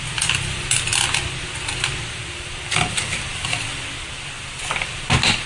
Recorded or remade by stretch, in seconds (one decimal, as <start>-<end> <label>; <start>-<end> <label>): 0.0-5.5 recorded